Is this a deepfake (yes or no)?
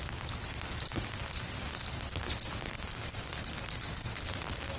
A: no